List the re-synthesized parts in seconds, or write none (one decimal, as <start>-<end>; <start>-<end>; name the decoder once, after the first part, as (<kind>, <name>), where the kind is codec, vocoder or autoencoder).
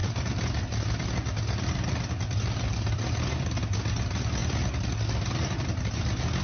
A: 0.0-3.3 (vocoder, BigVGAN v2)